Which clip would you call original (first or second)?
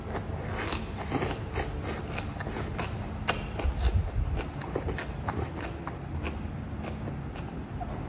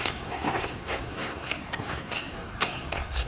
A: first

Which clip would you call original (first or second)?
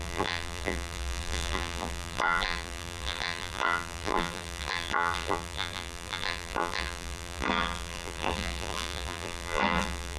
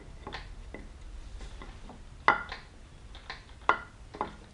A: second